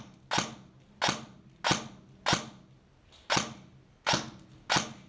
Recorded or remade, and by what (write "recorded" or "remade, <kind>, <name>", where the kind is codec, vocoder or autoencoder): recorded